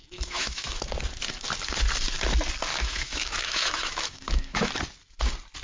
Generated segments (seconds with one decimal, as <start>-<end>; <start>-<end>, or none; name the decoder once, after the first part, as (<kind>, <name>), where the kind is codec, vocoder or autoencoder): 0.0-0.8 (autoencoder, DAC-VAE); 2.7-4.7